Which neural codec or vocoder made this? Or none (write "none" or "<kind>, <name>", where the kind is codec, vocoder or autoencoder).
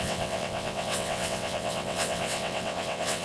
vocoder, WaveNeXt